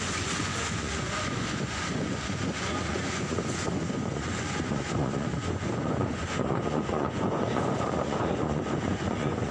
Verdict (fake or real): fake